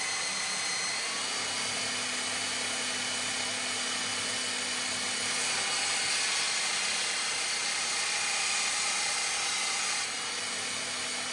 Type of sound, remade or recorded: recorded